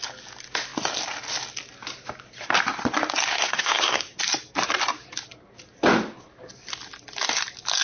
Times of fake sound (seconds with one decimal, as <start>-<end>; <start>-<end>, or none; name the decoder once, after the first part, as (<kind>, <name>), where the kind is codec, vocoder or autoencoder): 3.3-4.2 (codec, SNAC)